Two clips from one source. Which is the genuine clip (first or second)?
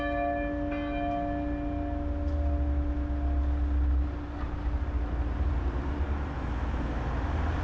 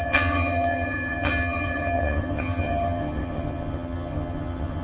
first